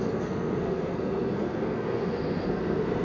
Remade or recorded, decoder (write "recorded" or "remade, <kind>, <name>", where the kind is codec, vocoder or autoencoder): remade, codec, SNAC